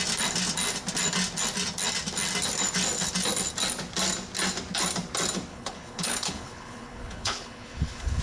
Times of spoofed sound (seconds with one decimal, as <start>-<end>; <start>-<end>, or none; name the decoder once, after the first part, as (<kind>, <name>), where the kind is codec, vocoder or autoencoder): 5.5-8.2 (codec, HILCodec)